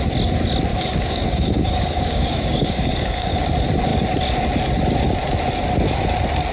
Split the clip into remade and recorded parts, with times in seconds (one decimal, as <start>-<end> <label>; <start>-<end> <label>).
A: 0.0-0.7 recorded; 0.7-3.5 remade; 3.5-6.5 recorded